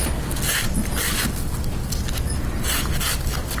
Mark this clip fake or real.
real